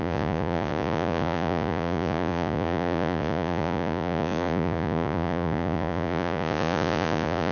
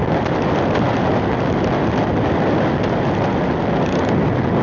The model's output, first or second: first